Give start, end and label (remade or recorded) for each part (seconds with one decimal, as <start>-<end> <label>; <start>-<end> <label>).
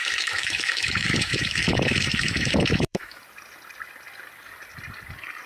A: 0.0-3.2 remade; 3.2-5.5 recorded